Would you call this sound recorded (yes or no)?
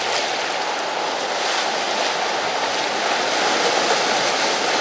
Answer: yes